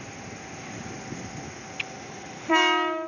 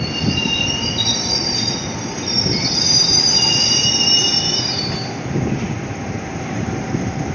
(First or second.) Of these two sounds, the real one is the first